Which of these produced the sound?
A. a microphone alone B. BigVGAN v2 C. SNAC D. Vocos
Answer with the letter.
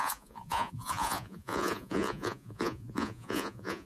D